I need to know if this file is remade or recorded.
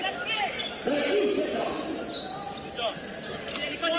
recorded